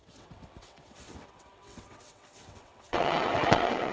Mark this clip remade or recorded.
remade